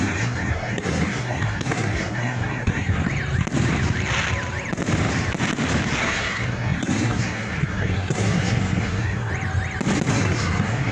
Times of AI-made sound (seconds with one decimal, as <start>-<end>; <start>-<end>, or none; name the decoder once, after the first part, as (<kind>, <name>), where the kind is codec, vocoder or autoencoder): 0.0-3.0 (codec, SNAC); 6.0-9.3; 10.1-10.9